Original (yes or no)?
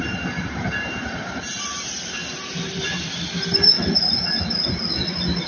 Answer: yes